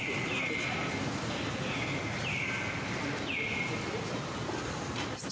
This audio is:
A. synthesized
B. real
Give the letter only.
B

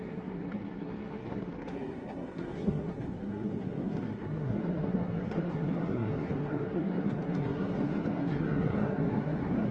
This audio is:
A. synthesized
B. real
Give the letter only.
A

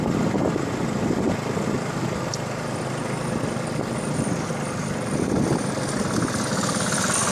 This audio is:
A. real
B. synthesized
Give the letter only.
A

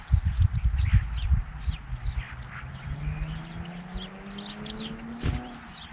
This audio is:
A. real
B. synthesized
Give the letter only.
A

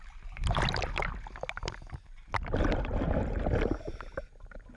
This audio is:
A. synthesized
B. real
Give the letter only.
B